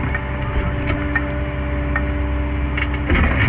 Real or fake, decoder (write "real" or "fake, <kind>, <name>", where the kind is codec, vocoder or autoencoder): real